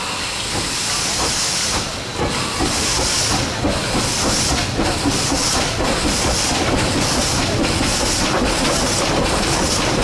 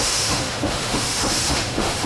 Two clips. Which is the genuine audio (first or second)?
first